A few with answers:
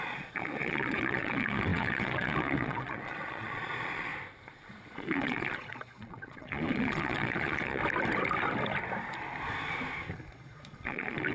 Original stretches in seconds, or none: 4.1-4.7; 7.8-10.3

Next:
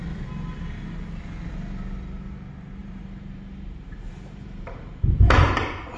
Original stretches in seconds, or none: 0.0-2.8; 5.6-6.0